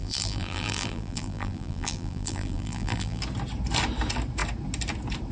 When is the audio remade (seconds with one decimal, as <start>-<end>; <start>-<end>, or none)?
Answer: 0.0-3.2